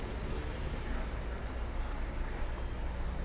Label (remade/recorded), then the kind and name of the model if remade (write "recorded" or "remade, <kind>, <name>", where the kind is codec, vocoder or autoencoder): recorded